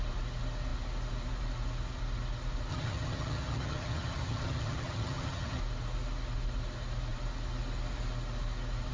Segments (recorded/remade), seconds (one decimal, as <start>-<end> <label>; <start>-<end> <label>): 0.0-2.7 recorded; 2.7-5.6 remade; 5.6-8.9 recorded